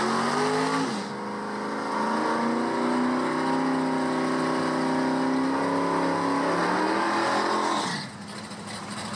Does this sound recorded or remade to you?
recorded